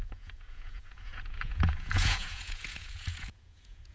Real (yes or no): no